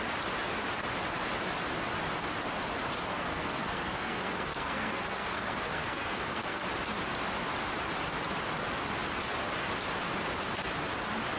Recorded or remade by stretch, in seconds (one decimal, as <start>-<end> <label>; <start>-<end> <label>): 0.0-3.1 recorded; 3.1-6.6 remade; 6.6-11.4 recorded